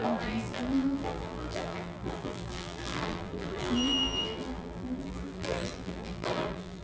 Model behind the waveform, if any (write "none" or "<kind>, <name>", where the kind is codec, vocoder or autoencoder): vocoder, BigVGAN v2